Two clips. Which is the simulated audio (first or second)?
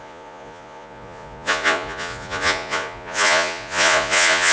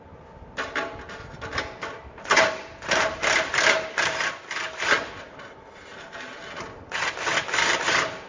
first